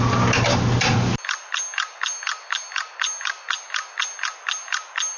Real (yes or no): yes